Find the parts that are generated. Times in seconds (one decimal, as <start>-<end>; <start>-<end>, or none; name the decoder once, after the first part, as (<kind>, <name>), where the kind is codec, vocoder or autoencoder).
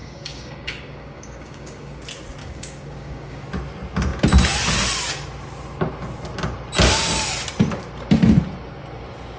0.0-2.0 (codec, DAC); 2.4-3.4